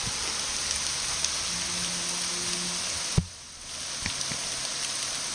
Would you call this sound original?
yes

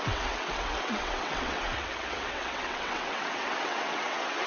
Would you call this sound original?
no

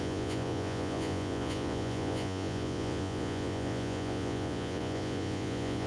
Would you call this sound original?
no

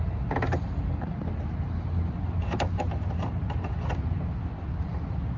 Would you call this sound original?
yes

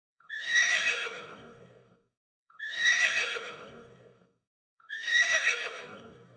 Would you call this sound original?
no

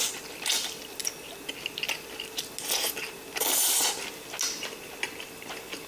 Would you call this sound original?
yes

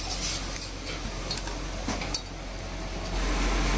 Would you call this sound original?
yes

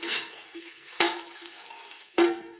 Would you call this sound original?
no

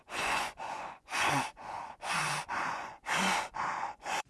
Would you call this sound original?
no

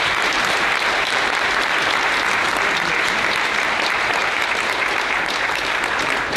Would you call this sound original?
no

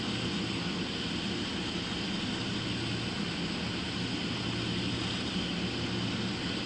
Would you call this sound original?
yes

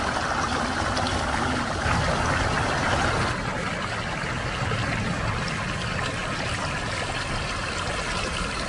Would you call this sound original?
yes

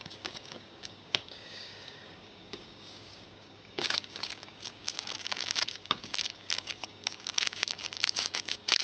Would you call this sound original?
no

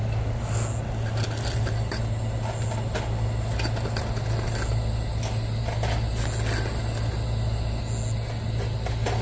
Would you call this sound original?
yes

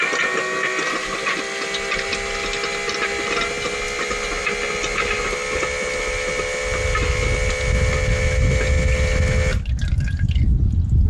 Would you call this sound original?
yes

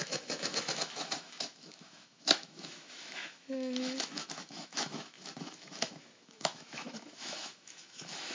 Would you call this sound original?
no